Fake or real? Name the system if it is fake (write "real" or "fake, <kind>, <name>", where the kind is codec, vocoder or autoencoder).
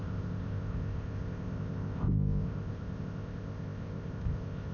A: fake, codec, ZipCodec